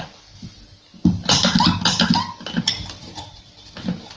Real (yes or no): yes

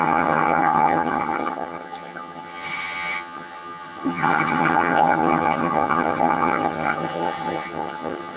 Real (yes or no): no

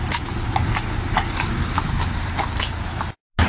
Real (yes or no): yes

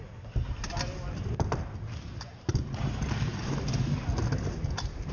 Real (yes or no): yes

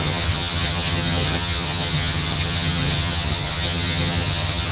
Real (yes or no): no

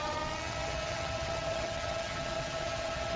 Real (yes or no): no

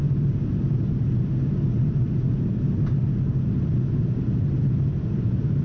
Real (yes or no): yes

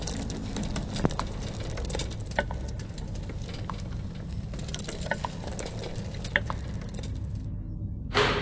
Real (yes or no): yes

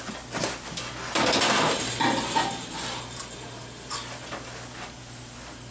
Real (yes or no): yes